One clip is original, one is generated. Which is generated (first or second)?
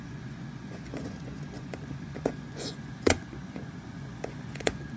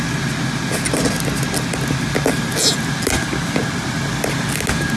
first